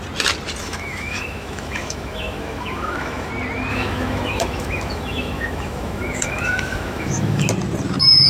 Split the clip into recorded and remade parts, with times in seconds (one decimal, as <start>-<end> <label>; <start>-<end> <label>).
0.0-0.6 recorded; 0.6-3.3 remade; 3.3-3.7 recorded; 3.7-7.5 remade; 7.5-8.3 recorded